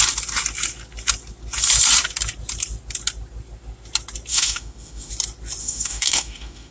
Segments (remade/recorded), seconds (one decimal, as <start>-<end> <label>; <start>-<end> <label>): 0.0-4.3 recorded; 4.3-5.1 remade; 5.1-5.6 recorded; 5.6-6.7 remade